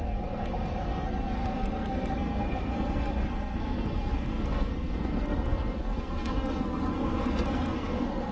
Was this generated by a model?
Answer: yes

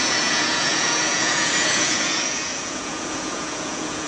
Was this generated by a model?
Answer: yes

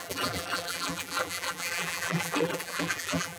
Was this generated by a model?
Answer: yes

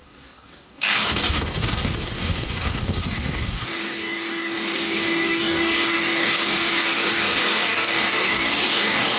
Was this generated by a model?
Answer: yes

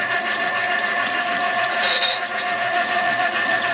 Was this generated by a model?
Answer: yes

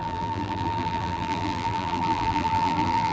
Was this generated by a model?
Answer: yes